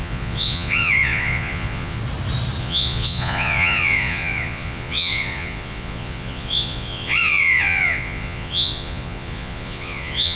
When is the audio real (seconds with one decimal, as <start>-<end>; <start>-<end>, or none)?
2.0-2.6